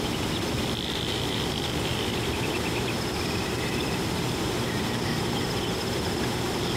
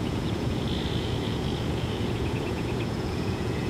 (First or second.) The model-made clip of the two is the second